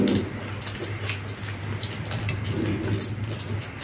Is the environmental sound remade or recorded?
recorded